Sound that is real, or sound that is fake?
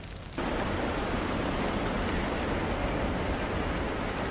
real